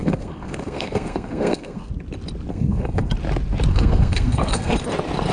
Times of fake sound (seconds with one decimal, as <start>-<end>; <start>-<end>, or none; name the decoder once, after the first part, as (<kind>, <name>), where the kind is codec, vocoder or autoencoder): 0.0-1.9 (codec, SNAC); 2.5-3.1; 3.7-4.7